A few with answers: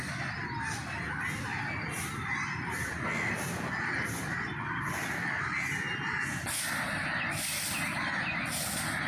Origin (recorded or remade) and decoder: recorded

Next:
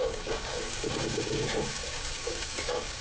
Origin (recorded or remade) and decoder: remade, codec, DAC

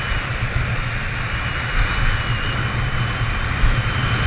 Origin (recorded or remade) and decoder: recorded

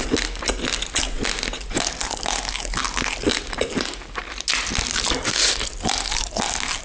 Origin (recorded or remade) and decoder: recorded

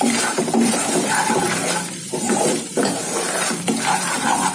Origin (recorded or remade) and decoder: remade, vocoder, BigVGAN v2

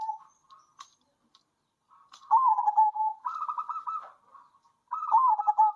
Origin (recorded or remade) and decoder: recorded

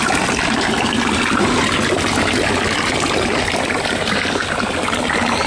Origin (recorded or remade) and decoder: recorded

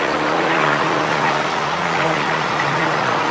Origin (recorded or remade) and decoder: remade, vocoder, Vocos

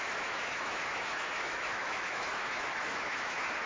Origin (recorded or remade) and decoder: remade, autoencoder, DAC-VAE